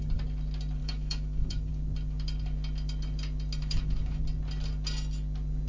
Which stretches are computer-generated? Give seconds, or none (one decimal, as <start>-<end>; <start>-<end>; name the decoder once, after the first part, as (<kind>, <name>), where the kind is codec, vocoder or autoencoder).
0.8-1.7 (autoencoder, DAC-VAE); 3.6-4.2